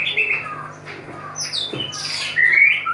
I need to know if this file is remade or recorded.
recorded